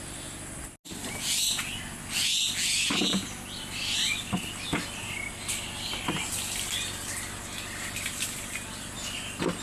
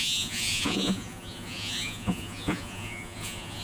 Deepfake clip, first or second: second